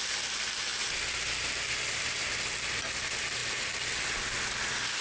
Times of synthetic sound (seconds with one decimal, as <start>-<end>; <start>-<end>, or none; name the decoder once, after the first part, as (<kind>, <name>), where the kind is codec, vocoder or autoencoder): none